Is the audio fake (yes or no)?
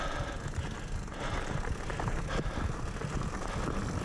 no